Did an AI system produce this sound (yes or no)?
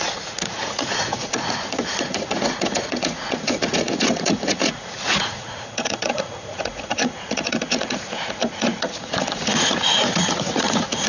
yes